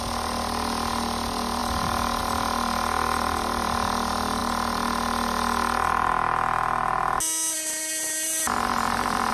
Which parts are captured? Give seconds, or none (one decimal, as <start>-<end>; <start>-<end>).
0.0-9.3